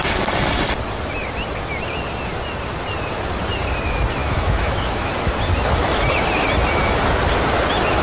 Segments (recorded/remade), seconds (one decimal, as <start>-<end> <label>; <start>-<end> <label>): 0.0-4.2 recorded; 4.2-5.1 remade; 5.1-8.0 recorded